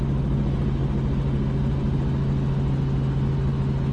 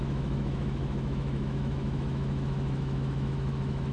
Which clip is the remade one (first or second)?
second